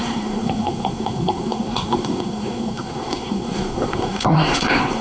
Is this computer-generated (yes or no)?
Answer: yes